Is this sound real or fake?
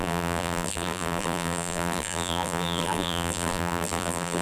fake